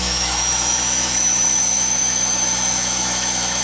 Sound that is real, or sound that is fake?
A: fake